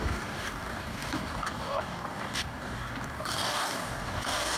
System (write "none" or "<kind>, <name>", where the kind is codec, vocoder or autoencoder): codec, DAC